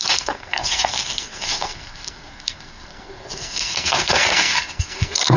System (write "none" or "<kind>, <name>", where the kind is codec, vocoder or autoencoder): codec, SNAC